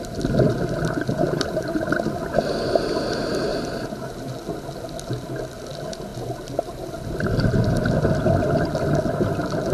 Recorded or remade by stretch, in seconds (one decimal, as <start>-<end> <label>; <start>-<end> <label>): 0.0-3.5 recorded; 3.5-4.2 remade; 4.2-9.7 recorded